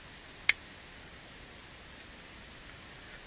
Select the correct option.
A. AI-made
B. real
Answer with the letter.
B